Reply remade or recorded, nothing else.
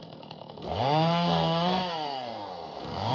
remade